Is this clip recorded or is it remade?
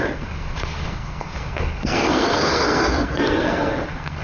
remade